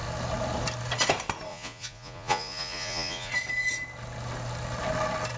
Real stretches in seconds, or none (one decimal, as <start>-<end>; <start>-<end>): 0.0-1.5; 3.3-5.4